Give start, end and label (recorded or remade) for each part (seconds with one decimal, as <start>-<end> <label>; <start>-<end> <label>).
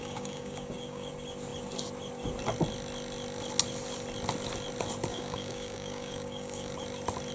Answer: 0.0-1.1 remade; 1.1-5.1 recorded; 5.1-6.7 remade; 6.7-7.3 recorded